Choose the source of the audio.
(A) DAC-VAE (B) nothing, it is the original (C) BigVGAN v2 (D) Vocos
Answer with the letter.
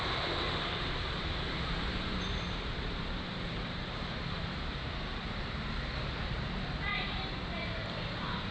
C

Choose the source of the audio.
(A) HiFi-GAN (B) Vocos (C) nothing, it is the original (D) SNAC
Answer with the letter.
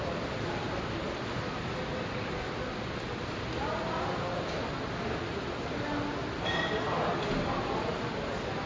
C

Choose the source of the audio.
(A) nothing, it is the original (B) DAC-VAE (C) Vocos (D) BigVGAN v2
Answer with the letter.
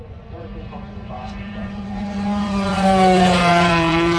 C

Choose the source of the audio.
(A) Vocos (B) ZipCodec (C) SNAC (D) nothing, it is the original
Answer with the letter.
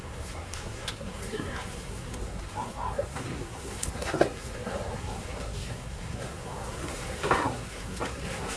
C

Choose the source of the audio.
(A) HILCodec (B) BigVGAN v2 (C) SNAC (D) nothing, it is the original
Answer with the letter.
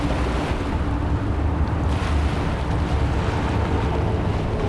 D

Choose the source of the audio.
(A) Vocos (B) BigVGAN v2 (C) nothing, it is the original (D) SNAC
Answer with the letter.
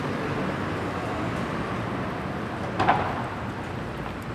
C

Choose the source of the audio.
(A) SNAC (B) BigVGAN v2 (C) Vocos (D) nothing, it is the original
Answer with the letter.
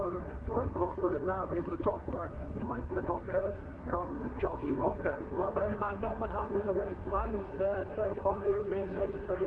A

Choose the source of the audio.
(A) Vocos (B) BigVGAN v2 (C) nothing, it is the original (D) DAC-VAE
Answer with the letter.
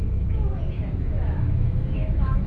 D